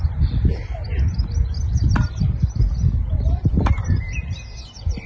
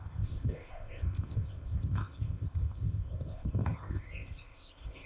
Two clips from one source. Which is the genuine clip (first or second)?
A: first